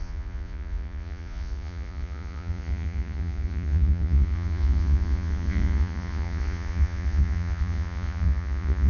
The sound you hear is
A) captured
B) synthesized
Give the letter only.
B